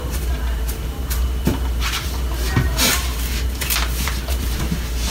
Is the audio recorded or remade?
remade